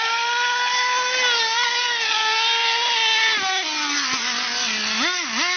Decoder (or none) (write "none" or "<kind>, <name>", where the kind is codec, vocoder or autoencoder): none